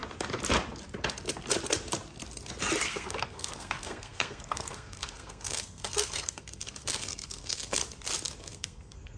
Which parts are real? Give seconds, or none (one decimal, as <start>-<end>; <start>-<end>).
0.0-2.8; 7.8-8.4